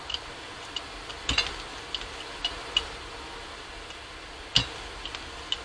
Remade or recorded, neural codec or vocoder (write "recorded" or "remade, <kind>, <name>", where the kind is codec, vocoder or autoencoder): recorded